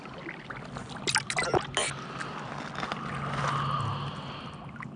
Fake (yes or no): no